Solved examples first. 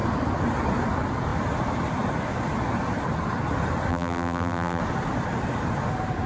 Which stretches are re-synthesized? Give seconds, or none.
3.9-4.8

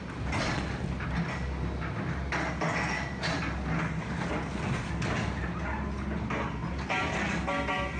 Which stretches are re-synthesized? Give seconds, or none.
none

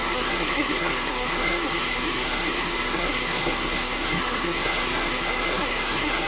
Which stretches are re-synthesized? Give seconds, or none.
0.0-6.3

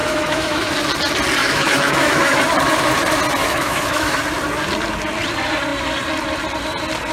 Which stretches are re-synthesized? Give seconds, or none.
0.0-0.7; 1.4-2.4; 3.4-4.2